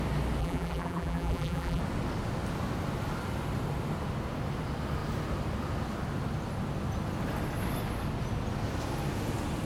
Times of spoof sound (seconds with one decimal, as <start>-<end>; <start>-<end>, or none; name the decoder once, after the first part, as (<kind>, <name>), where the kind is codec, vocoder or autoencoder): 0.4-1.8 (vocoder, BigVGAN v2)